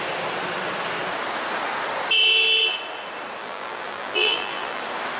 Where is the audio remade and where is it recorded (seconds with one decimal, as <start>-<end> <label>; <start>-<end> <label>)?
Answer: 0.0-3.4 recorded; 3.4-4.8 remade; 4.8-5.2 recorded